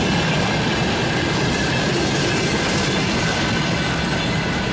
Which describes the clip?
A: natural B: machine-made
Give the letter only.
A